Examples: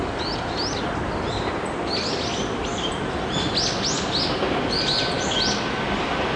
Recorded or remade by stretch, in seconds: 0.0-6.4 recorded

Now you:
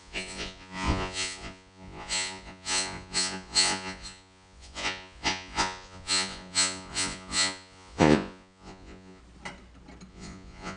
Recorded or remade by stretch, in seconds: 0.0-9.2 remade; 9.2-10.1 recorded; 10.1-10.8 remade